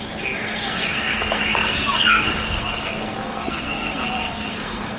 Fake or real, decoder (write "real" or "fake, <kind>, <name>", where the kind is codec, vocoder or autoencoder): fake, codec, SNAC